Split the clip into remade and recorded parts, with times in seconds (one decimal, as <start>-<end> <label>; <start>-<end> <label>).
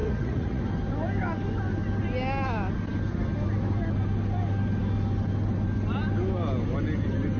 0.0-0.6 remade; 0.6-7.4 recorded